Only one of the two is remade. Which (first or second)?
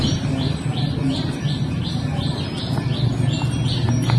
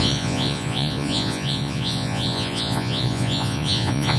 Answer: second